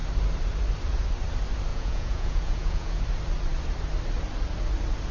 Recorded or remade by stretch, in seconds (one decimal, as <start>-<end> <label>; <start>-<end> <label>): 0.0-1.7 recorded; 1.7-3.0 remade; 3.0-5.1 recorded